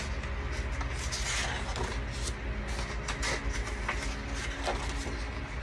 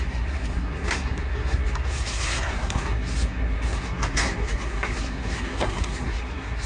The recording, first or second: first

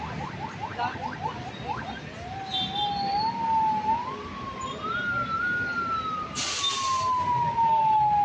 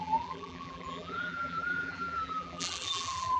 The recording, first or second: first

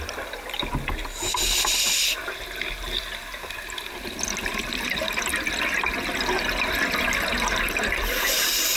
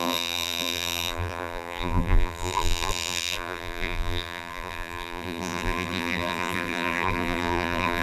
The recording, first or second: first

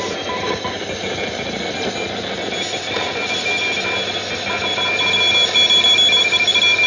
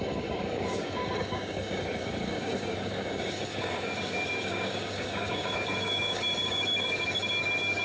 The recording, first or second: first